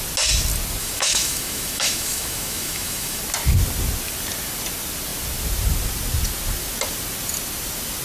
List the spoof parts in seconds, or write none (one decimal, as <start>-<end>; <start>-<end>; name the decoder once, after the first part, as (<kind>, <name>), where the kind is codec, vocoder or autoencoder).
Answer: 0.8-3.2 (autoencoder, DAC-VAE)